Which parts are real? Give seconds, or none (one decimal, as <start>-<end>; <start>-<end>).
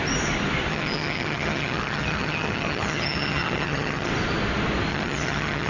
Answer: 0.0-0.7; 4.1-4.9